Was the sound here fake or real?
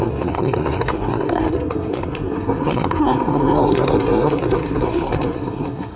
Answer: fake